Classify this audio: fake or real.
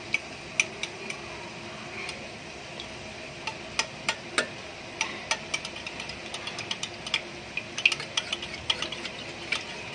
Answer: real